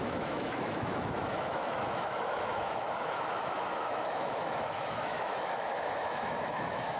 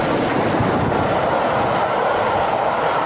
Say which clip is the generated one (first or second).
first